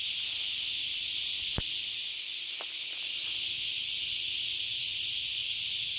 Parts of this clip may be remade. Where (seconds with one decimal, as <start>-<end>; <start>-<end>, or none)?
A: none